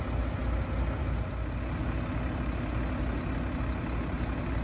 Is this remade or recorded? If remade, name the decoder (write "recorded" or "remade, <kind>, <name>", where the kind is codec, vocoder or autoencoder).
recorded